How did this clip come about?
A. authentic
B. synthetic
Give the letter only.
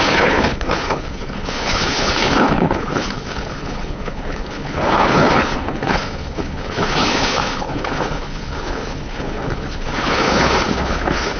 B